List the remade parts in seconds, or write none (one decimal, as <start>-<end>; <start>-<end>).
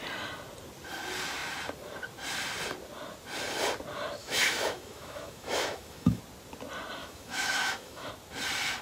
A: 4.2-6.2; 7.0-8.1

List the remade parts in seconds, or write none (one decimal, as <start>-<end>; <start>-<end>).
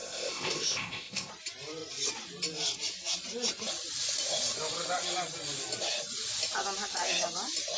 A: 0.0-1.3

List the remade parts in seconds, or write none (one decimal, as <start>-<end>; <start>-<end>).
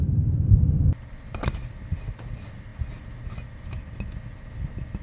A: none